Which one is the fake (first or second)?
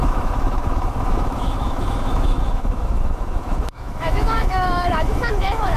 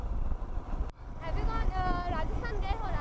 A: first